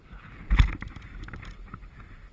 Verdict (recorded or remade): recorded